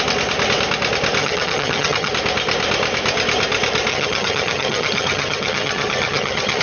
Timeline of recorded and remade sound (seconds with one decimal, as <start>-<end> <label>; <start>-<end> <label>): 0.0-1.2 recorded; 1.2-2.1 remade; 2.1-3.9 recorded; 3.9-6.6 remade